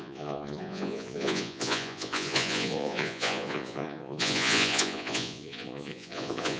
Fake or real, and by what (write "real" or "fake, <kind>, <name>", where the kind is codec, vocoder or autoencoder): fake, vocoder, Vocos